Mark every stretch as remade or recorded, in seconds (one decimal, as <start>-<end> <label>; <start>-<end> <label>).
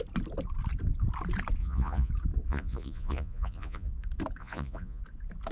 0.0-1.6 recorded; 1.6-2.1 remade; 2.1-2.5 recorded; 2.5-3.9 remade; 3.9-4.4 recorded; 4.4-5.0 remade; 5.0-5.5 recorded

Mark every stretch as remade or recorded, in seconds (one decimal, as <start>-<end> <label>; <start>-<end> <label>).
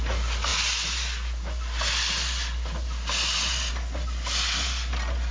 0.0-5.3 recorded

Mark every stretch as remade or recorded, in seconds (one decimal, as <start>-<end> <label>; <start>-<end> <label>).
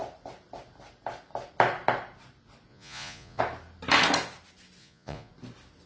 0.0-2.7 recorded; 2.7-3.4 remade; 3.4-4.8 recorded; 4.8-5.3 remade; 5.3-5.9 recorded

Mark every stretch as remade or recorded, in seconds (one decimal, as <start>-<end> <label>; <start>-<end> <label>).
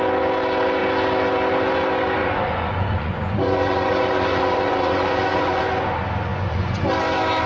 0.0-2.2 recorded; 2.2-5.6 remade; 5.6-6.3 recorded; 6.3-6.8 remade; 6.8-7.5 recorded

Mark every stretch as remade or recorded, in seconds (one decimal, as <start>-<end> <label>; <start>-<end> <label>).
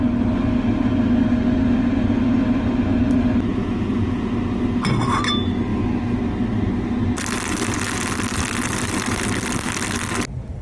0.0-3.5 recorded; 3.5-4.3 remade; 4.3-10.6 recorded